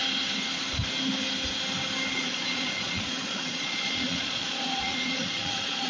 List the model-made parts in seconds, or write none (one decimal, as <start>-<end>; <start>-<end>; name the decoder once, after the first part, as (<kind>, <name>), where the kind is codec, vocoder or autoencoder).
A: 2.1-5.9 (vocoder, Vocos)